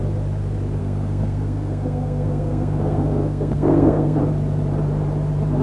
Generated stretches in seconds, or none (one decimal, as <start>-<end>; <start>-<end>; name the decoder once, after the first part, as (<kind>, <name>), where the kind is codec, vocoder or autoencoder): 0.8-4.2 (codec, SNAC)